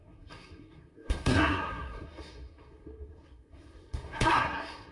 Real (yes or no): no